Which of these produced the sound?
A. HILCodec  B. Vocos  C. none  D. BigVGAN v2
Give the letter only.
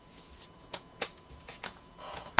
B